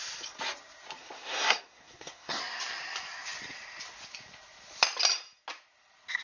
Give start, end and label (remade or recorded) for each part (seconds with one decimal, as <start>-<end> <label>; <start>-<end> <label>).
0.0-1.0 recorded; 1.0-2.4 remade; 2.4-6.2 recorded